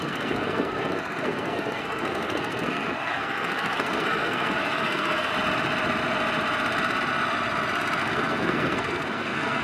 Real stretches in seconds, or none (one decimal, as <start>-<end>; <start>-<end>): 5.3-8.0